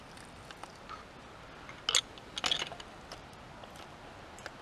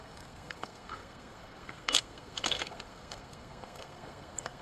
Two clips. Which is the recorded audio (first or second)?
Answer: first